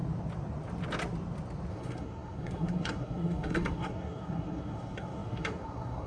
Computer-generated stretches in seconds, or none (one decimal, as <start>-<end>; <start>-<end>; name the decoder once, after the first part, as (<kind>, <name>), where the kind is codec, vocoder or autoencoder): 1.7-6.1 (codec, SNAC)